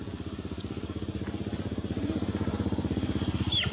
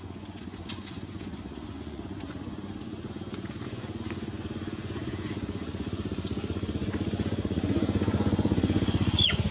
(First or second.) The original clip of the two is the first